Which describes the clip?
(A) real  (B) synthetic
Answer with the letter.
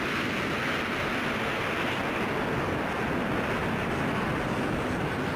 A